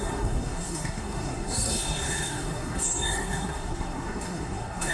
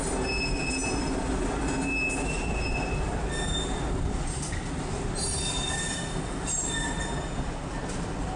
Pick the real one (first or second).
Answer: second